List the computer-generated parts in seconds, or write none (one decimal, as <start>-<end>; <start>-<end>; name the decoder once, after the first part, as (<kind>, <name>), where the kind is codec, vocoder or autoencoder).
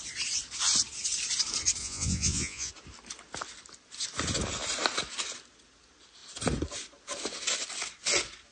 1.8-2.7 (vocoder, Vocos)